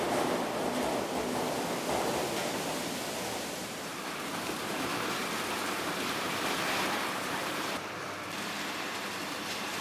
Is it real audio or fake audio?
fake